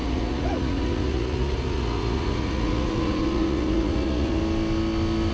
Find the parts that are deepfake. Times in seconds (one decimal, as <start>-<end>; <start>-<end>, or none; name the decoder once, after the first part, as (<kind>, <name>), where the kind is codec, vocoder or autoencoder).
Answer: 0.0-4.4 (vocoder, Vocos)